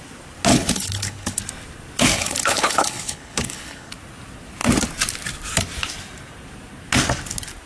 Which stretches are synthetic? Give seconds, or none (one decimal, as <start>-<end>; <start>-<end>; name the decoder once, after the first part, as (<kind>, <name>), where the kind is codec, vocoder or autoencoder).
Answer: 0.5-1.4 (codec, HILCodec); 2.1-3.9